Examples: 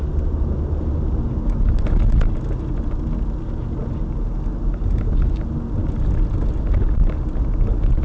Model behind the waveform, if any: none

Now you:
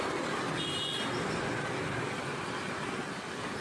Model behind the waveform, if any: vocoder, BigVGAN v2